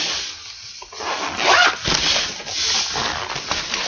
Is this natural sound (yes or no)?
yes